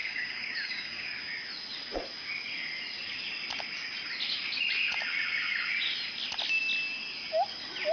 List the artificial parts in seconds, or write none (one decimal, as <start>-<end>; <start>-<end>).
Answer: 0.0-1.3

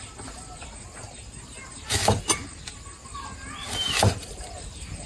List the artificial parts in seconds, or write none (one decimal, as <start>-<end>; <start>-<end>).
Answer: none

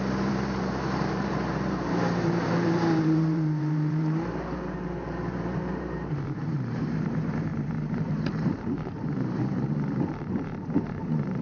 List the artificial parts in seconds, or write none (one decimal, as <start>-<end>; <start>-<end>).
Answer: 0.0-11.4

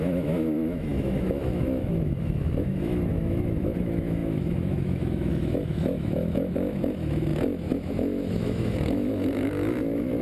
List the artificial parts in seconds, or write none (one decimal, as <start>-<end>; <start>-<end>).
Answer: 0.0-10.2

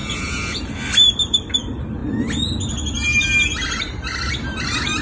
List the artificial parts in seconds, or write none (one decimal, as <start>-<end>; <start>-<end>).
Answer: none

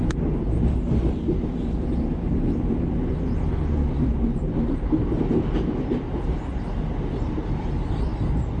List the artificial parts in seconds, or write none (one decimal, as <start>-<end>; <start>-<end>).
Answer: none